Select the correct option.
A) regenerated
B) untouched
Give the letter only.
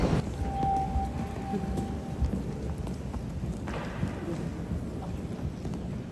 B